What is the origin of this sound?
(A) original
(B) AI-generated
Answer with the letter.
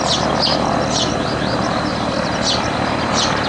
A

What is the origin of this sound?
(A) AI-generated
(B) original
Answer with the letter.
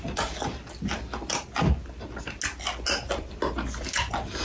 B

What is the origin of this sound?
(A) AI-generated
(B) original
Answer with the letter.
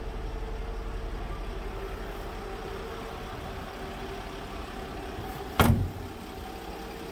B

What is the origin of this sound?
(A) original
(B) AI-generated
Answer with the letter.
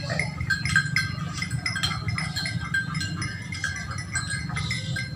A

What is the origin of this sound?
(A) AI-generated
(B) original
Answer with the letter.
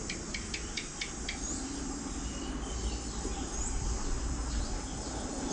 B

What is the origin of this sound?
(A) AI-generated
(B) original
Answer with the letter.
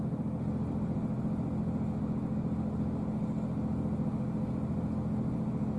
B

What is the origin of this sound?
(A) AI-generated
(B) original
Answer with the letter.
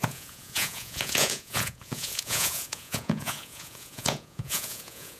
A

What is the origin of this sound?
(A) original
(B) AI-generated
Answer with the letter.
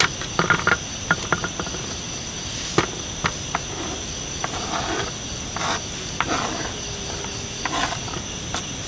A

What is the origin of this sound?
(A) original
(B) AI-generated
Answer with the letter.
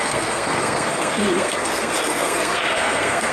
B